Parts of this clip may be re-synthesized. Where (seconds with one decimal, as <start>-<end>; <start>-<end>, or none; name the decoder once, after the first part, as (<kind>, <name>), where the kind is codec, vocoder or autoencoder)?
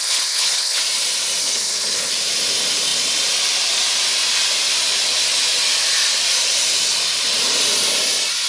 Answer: 0.0-0.8 (codec, HILCodec); 1.4-2.1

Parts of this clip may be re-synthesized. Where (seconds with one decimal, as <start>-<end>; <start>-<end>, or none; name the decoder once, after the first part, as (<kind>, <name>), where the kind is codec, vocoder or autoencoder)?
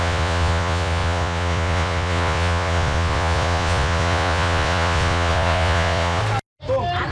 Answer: 0.0-6.2 (vocoder, Vocos)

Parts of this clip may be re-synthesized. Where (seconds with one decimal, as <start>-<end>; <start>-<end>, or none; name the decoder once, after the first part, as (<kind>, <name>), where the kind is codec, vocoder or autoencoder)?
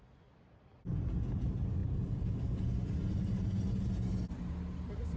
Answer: none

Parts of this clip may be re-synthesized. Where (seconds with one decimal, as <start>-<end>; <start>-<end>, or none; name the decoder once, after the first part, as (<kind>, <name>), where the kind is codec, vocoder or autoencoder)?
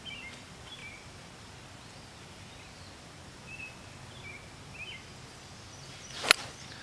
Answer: none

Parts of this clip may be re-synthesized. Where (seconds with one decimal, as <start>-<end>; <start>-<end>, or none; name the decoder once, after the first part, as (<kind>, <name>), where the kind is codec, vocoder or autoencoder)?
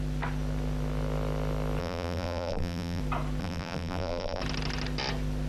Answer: 1.8-3.0 (vocoder, BigVGAN v2); 3.4-4.4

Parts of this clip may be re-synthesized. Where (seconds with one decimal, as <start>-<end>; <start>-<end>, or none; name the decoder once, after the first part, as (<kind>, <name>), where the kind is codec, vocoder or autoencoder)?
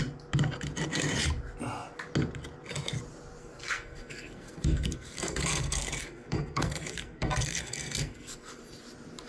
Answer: 3.4-8.6 (codec, SNAC)